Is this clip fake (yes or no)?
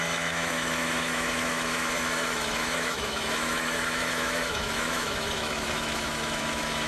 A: yes